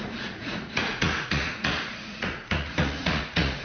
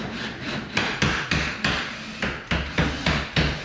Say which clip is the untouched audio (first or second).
second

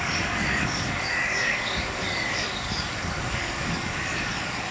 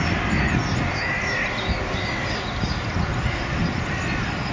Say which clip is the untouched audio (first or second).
second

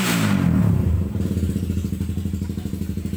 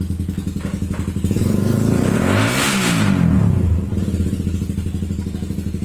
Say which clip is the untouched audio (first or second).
second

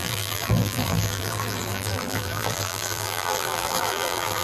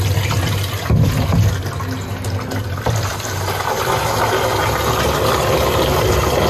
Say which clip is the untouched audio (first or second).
second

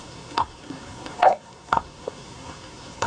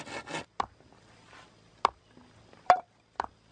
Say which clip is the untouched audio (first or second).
second